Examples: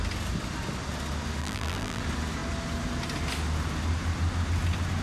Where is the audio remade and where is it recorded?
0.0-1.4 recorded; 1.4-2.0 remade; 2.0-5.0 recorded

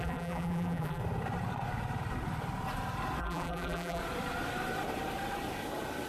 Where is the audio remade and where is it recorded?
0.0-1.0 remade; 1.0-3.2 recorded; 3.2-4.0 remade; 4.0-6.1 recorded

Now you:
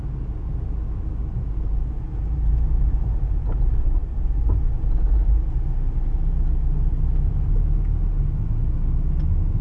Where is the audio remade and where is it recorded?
0.0-1.2 recorded; 1.2-2.5 remade; 2.5-9.6 recorded

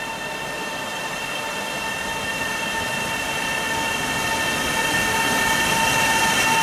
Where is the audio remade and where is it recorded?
0.0-6.6 recorded